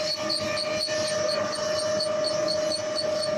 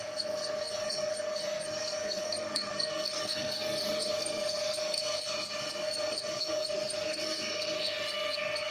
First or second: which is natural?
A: first